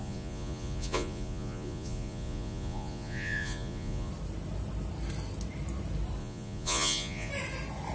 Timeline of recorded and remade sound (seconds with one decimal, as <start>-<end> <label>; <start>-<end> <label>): 0.0-4.1 remade; 4.1-6.2 recorded; 6.2-7.3 remade; 7.3-7.9 recorded